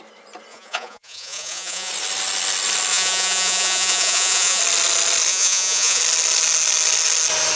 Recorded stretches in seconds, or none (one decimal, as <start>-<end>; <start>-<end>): 0.0-0.5; 1.9-2.9; 4.6-5.3; 6.0-7.6